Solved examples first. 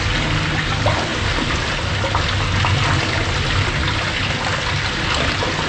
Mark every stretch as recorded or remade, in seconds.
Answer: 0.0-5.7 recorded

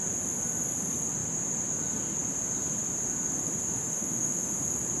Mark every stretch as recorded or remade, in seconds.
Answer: 0.0-3.8 recorded; 3.8-4.5 remade; 4.5-5.0 recorded

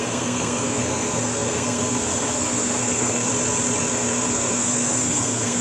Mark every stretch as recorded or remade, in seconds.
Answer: 0.0-3.3 remade; 3.3-3.9 recorded; 3.9-5.6 remade

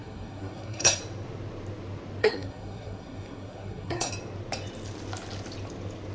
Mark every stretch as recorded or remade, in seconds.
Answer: 0.0-1.0 remade; 1.0-2.2 recorded; 2.2-4.1 remade; 4.1-6.1 recorded